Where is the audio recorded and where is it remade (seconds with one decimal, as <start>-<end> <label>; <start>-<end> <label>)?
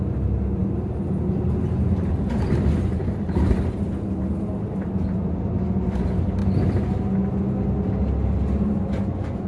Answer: 0.0-9.5 recorded